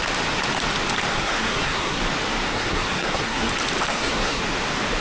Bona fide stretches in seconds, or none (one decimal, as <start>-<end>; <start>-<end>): 0.0-1.1; 2.0-2.5; 3.5-3.9; 4.4-5.0